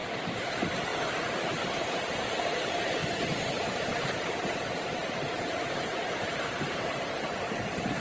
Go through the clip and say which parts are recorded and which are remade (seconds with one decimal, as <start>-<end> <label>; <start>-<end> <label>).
0.0-0.5 recorded; 0.5-0.9 remade; 0.9-1.8 recorded; 1.8-3.0 remade; 3.0-4.0 recorded; 4.0-8.0 remade